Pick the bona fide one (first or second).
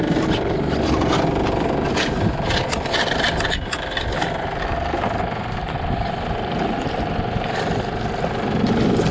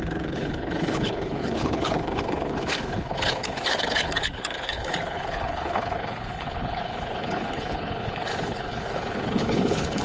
first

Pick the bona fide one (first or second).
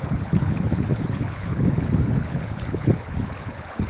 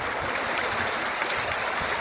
second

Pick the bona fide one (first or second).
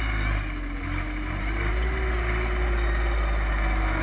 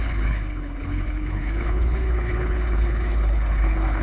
first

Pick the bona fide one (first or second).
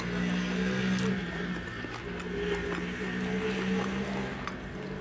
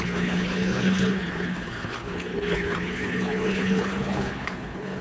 first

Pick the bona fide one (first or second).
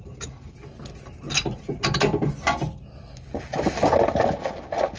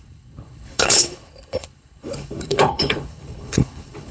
first